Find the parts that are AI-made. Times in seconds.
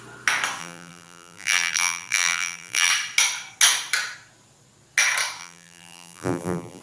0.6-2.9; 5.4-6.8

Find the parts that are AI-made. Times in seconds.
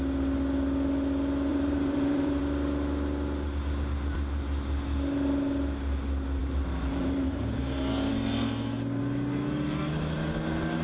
1.5-2.4; 6.4-7.6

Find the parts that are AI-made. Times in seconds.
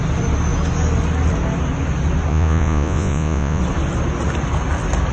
2.3-3.6